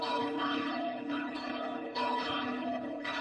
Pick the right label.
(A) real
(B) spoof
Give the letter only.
B